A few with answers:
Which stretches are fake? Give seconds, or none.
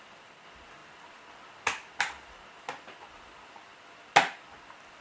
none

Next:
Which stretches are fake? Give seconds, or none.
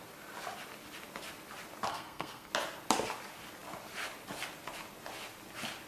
1.9-2.5 (codec, SNAC)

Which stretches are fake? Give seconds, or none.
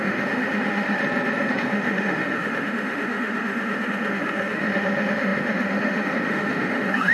0.0-1.0 (autoencoder, DAC-VAE); 1.5-7.1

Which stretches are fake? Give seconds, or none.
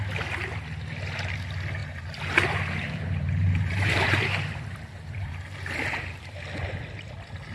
1.8-6.3 (vocoder, BigVGAN v2)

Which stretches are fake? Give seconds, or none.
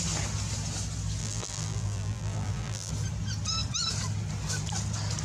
1.2-2.9 (vocoder, BigVGAN v2)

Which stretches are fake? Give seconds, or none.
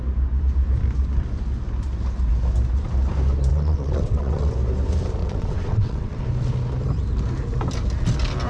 3.5-4.5 (vocoder, WaveNeXt); 5.2-6.2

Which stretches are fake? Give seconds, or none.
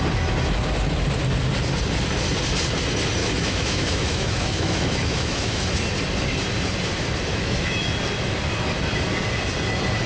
3.2-5.7 (autoencoder, DAC-VAE); 7.3-7.9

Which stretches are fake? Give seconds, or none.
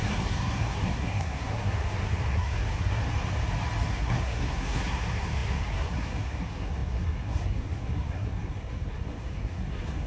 0.0-3.0 (codec, SNAC); 3.9-10.1